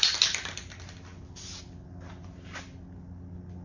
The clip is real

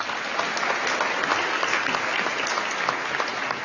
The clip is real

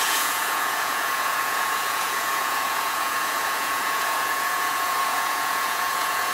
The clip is fake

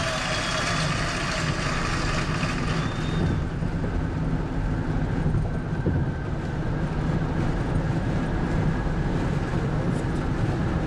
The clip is real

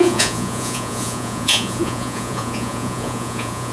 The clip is fake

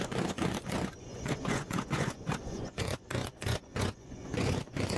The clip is fake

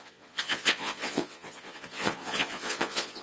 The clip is fake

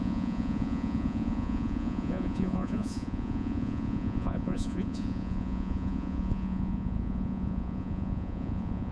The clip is fake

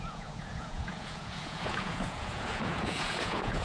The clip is fake